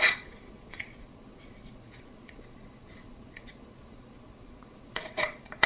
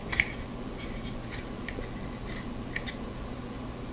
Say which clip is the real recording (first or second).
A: second